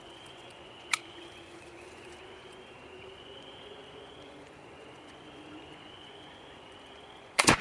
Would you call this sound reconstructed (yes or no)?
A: yes